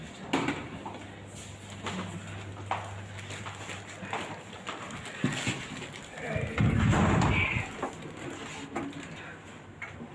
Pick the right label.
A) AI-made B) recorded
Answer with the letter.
B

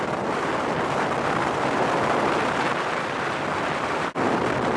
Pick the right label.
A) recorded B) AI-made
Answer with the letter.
B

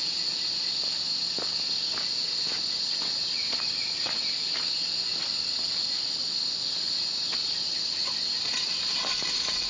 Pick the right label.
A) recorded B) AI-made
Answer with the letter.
A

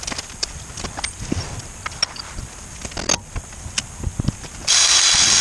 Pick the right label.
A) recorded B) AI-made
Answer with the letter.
A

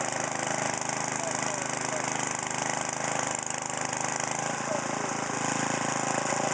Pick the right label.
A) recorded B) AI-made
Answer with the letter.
A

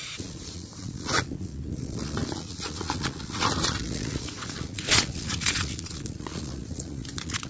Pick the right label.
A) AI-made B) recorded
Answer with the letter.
A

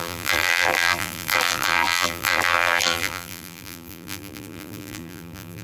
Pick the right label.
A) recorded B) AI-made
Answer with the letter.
B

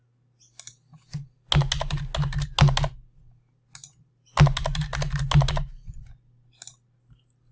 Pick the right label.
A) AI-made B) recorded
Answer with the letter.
B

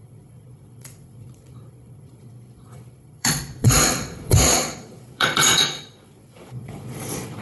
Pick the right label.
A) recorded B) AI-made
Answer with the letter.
B